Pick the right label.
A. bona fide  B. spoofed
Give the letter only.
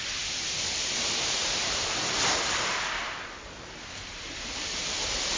B